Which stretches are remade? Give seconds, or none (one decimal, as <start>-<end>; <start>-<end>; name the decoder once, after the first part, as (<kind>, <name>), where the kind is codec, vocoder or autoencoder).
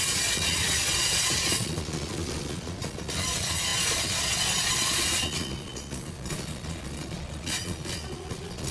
0.0-8.7 (vocoder, Vocos)